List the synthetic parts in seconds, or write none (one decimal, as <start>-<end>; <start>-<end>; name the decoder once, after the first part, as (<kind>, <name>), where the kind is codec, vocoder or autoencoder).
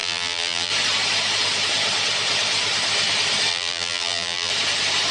0.0-0.7 (vocoder, BigVGAN v2); 3.5-4.5